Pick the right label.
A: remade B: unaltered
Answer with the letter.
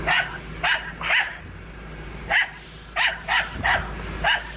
B